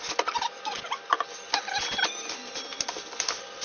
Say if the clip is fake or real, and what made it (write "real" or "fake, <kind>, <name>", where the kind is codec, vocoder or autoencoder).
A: real